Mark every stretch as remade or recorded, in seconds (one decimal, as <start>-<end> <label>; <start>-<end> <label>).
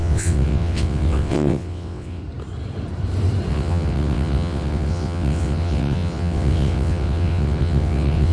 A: 0.0-2.2 remade; 2.2-3.5 recorded; 3.5-8.3 remade